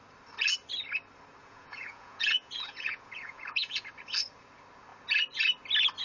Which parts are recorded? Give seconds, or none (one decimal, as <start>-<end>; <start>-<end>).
0.0-1.4; 3.9-6.0